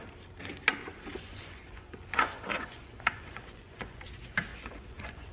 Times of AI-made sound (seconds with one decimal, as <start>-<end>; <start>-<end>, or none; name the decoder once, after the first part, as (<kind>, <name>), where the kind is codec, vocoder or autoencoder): 0.8-4.0 (vocoder, Vocos); 4.5-5.3